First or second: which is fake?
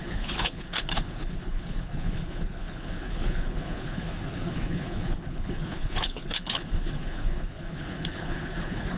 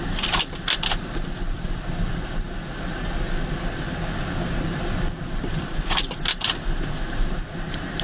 first